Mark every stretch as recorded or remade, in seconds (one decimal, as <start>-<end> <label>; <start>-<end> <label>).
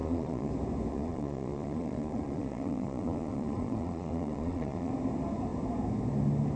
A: 0.0-0.5 remade; 0.5-0.9 recorded; 0.9-4.9 remade; 4.9-6.6 recorded